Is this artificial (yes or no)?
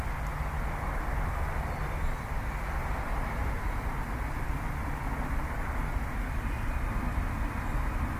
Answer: no